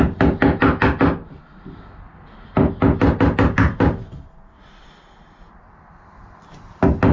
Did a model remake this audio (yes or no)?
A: no